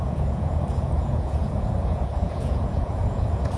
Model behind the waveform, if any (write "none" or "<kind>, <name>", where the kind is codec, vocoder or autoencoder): vocoder, Vocos